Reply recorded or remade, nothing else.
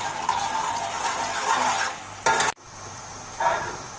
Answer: recorded